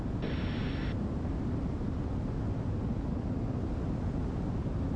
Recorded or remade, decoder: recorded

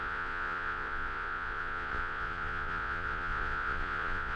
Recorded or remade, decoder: remade, vocoder, Vocos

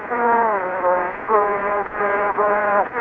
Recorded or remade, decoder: remade, vocoder, Vocos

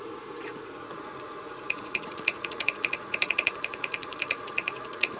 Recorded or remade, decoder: remade, vocoder, Vocos